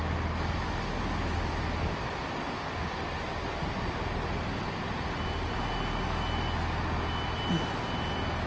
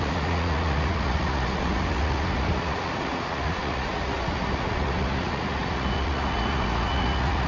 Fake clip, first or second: second